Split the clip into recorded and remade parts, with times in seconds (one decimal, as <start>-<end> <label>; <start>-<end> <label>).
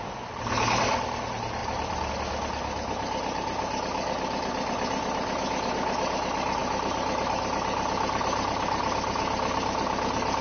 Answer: 0.0-1.6 recorded; 1.6-2.1 remade; 2.1-10.4 recorded